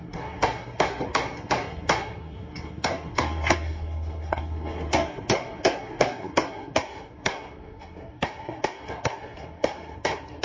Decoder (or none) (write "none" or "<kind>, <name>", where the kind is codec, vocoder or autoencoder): codec, SNAC